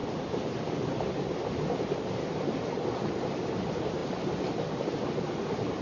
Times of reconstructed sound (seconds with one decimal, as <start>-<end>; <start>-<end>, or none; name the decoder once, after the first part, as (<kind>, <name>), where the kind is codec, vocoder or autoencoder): none